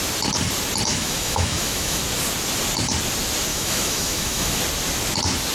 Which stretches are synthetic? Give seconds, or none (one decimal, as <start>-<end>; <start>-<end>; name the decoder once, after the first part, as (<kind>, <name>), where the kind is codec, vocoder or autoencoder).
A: 0.9-2.0 (autoencoder, DAC-VAE); 3.5-4.6